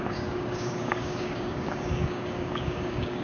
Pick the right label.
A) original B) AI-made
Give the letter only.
B